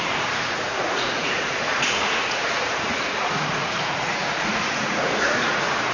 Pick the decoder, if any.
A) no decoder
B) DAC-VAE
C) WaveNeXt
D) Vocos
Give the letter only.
D